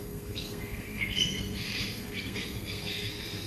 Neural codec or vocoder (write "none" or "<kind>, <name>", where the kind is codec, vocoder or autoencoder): codec, SNAC